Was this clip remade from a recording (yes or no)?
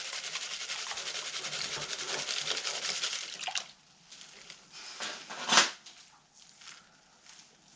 no